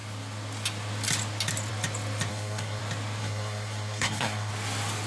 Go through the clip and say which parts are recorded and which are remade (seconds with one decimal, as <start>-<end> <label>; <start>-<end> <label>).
0.0-2.3 recorded; 2.3-2.8 remade; 2.8-3.2 recorded; 3.2-4.5 remade; 4.5-5.1 recorded